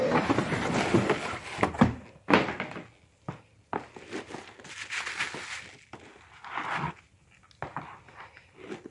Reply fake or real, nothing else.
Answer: real